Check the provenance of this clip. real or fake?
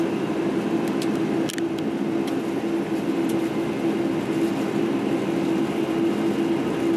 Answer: real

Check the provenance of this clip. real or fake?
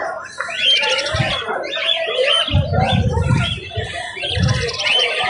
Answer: real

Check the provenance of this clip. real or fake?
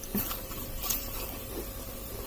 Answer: fake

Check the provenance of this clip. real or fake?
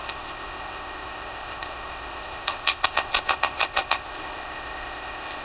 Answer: fake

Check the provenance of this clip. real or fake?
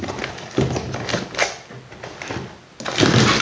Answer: real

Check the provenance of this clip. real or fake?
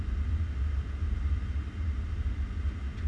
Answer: real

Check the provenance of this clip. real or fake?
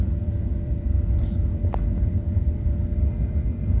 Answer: fake